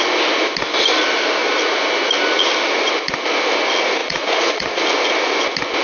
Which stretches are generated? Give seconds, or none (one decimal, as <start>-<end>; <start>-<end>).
4.0-4.8